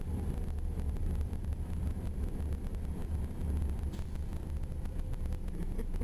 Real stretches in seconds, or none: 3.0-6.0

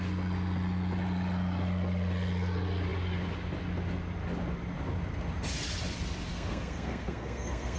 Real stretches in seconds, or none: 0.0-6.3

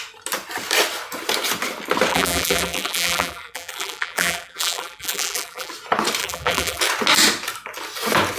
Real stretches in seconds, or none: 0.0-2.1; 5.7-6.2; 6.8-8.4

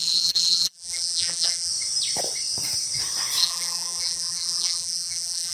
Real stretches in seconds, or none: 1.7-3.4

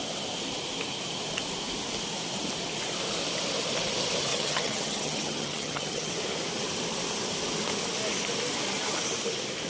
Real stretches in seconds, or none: 0.0-4.3; 6.1-9.7

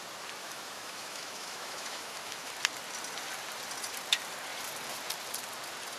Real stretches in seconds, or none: 0.0-0.4; 2.5-6.0